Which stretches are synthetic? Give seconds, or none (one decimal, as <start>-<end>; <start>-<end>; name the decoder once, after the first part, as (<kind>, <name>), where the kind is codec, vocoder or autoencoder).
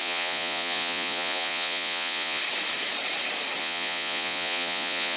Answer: 0.0-2.4 (vocoder, Vocos); 3.6-5.2